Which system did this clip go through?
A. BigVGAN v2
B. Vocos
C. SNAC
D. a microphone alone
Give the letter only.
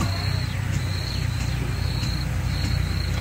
D